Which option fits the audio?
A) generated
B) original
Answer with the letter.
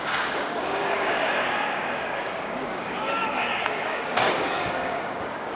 A